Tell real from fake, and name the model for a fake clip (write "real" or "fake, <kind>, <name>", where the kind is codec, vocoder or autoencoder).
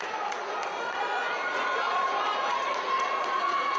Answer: fake, vocoder, Vocos